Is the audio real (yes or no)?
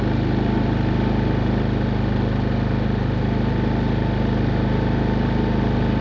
yes